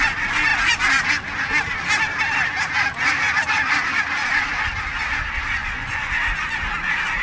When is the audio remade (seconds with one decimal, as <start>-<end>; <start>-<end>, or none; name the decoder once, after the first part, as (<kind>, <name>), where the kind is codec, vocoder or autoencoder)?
5.6-6.1 (vocoder, Vocos)